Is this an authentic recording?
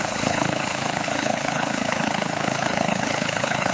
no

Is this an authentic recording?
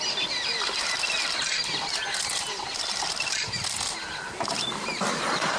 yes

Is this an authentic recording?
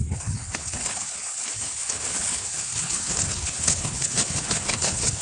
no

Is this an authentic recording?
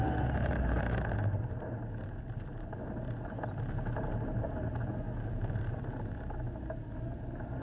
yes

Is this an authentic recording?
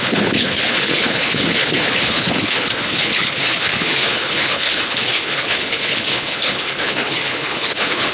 no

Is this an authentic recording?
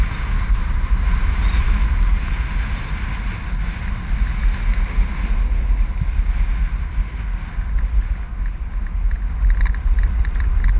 yes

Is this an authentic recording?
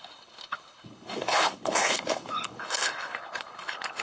no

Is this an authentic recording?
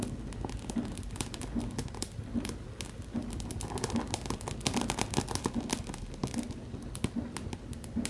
yes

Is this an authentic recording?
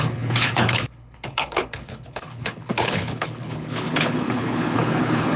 no